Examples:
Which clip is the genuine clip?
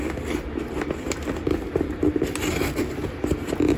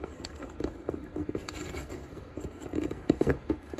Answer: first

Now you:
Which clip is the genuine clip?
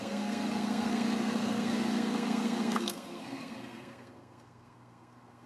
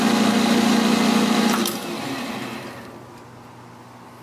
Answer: second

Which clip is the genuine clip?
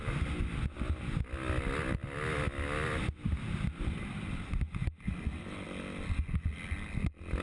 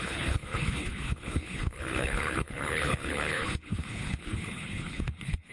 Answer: first